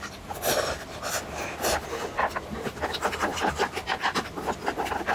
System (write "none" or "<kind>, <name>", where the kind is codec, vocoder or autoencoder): none